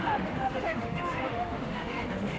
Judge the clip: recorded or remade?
remade